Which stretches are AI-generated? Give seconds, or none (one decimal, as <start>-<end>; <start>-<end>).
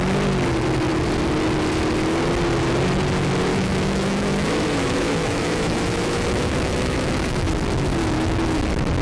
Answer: 3.5-7.5; 8.0-8.6